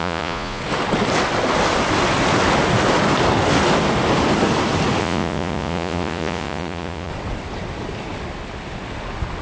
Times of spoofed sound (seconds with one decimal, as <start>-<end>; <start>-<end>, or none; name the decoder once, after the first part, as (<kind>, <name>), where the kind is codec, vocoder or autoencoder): 0.0-0.6 (vocoder, Vocos); 5.0-7.1